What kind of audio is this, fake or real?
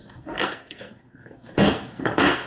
fake